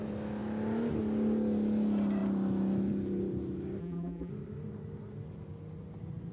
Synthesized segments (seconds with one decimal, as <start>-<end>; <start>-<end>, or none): 3.8-4.3

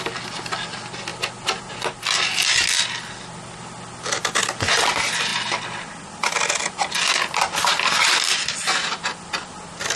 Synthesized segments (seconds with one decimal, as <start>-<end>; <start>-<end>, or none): none

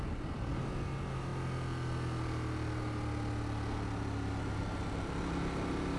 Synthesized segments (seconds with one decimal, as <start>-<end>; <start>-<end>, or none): none

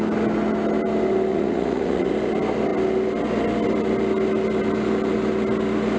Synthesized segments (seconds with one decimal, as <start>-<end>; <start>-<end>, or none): 1.3-2.1

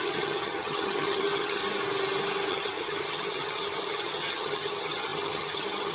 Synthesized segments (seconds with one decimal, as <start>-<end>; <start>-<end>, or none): 0.0-1.6; 2.5-5.9

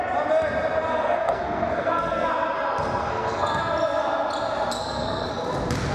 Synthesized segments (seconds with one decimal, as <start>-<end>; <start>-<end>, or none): 0.9-2.3; 3.0-3.6; 4.8-5.3